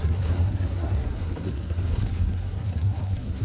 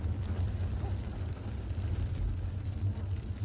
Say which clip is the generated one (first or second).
first